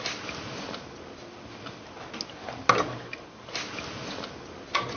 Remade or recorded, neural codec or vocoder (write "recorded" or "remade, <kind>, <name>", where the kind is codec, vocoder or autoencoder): recorded